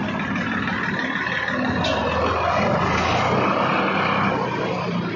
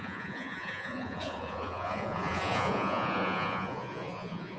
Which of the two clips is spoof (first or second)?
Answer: second